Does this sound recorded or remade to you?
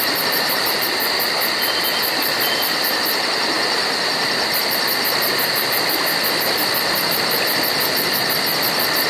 recorded